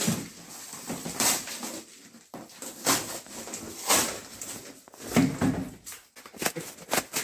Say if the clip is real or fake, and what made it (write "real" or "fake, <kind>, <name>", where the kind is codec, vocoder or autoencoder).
real